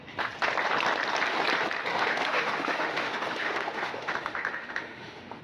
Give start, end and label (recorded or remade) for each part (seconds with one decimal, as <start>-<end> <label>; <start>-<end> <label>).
0.0-1.9 recorded; 1.9-5.4 remade